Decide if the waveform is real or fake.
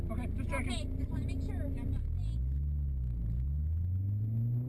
real